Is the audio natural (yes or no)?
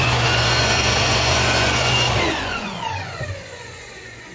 no